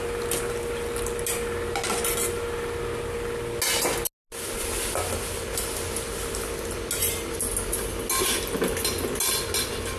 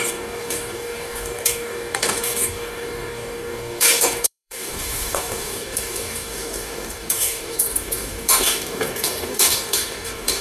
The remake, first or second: second